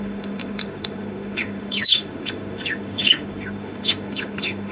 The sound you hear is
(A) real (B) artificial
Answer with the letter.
B